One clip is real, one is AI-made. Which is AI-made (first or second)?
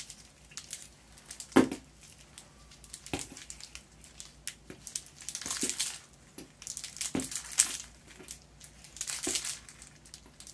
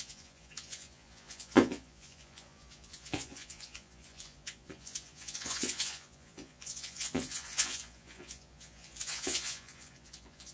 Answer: second